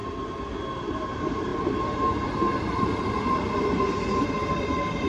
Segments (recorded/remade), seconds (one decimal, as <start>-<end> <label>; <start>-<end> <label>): 0.0-0.8 recorded; 0.8-5.1 remade